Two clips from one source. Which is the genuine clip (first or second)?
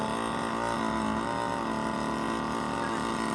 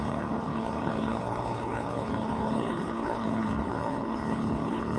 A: first